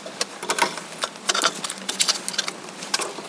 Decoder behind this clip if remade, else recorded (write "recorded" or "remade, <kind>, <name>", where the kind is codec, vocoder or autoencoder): recorded